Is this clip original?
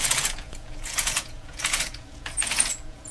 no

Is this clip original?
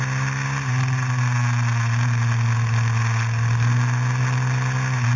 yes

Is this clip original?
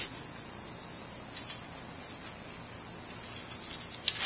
yes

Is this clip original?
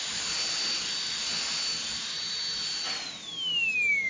yes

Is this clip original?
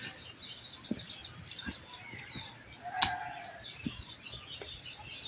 yes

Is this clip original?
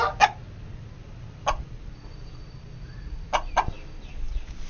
yes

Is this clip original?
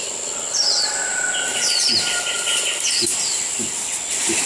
yes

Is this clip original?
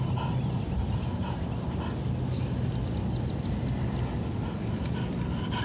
yes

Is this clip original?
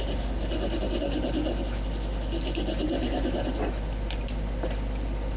yes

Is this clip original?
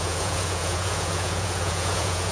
no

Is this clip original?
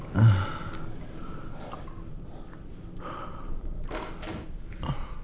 yes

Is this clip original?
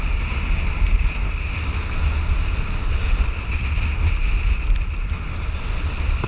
yes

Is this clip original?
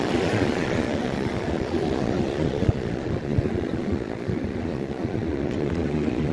no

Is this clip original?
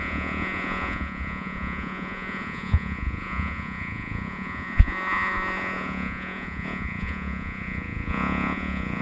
no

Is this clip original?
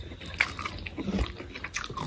yes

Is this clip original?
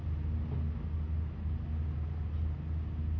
yes